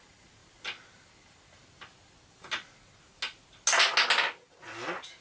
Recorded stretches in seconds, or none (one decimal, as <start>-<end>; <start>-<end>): 0.0-5.2